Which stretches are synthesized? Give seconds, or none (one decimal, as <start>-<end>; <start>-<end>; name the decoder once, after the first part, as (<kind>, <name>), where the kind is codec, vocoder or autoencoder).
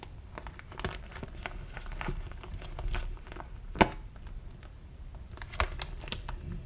0.0-6.7 (vocoder, BigVGAN v2)